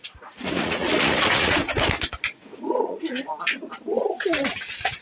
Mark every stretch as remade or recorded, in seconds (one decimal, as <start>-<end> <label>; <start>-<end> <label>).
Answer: 0.0-1.6 remade; 1.6-2.7 recorded; 2.7-3.3 remade; 3.3-4.0 recorded; 4.0-5.0 remade